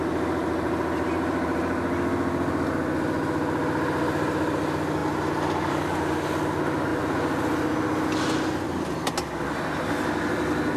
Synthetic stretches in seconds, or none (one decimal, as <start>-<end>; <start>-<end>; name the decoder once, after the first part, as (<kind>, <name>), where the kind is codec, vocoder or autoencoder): none

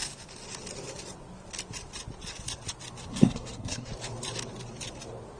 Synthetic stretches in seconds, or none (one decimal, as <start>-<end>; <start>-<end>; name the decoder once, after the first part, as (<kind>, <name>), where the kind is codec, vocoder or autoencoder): 3.1-3.9 (codec, SNAC)

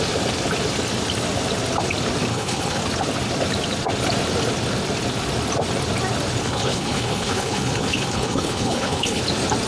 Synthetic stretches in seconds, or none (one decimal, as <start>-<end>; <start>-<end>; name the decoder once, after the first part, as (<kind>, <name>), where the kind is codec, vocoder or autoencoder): 2.3-2.8 (codec, HILCodec); 6.4-9.2

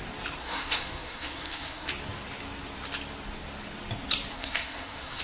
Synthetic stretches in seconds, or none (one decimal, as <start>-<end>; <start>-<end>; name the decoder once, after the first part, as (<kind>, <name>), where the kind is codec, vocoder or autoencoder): 0.4-1.9 (codec, SNAC); 4.3-5.2

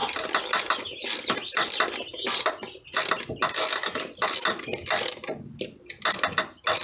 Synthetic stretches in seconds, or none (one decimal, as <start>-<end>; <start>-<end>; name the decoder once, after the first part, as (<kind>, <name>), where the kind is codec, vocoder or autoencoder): none

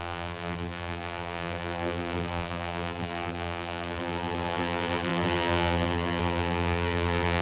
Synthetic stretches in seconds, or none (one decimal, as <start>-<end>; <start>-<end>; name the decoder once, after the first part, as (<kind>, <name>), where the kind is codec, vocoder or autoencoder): 0.0-7.4 (vocoder, BigVGAN v2)

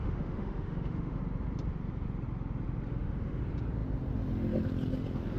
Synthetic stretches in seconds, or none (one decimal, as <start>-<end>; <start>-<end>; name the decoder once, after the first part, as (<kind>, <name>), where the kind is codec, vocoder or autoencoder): 0.0-1.2 (autoencoder, DAC-VAE); 2.9-3.4